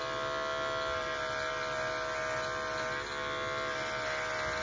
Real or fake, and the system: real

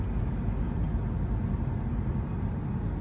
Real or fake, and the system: real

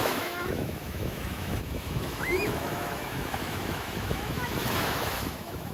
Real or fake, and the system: fake, autoencoder, DAC-VAE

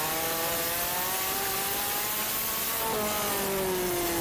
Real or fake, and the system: real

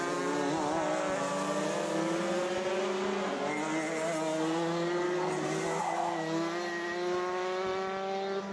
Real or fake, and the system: real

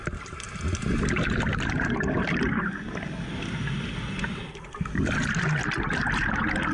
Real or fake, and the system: real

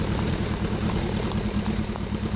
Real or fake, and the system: fake, vocoder, BigVGAN v2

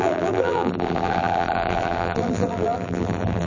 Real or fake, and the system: fake, vocoder, BigVGAN v2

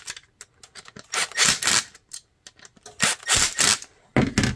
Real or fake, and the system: real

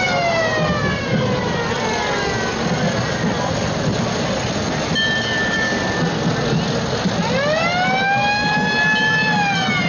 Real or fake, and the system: real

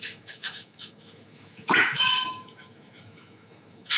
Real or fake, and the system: fake, autoencoder, DAC-VAE